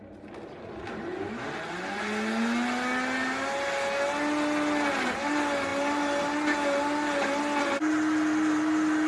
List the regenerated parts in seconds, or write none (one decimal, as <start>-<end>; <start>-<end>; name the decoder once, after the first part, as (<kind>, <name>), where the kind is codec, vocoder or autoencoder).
none

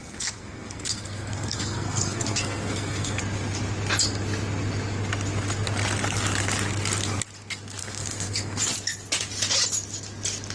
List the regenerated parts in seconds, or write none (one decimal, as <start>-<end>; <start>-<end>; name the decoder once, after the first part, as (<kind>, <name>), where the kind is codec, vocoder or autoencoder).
0.0-3.2 (codec, SNAC); 7.8-8.6

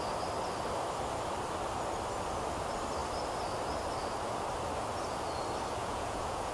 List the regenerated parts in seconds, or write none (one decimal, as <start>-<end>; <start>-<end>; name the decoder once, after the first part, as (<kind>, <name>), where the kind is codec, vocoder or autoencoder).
5.8-6.5 (vocoder, Vocos)

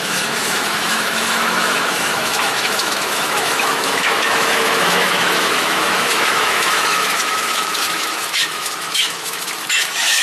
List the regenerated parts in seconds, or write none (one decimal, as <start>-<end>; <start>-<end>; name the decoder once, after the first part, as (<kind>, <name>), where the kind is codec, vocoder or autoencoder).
0.0-10.2 (autoencoder, DAC-VAE)